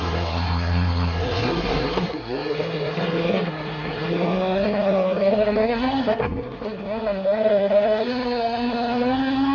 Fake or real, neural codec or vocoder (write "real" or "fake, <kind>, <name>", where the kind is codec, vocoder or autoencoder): fake, codec, SNAC